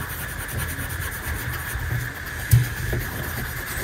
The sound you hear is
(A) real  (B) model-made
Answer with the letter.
A